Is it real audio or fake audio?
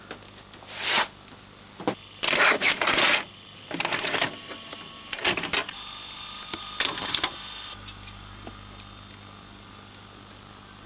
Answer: real